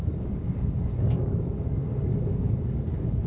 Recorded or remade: remade